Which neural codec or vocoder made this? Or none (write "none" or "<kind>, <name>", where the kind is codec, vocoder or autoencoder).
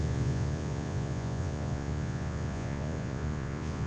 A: vocoder, Vocos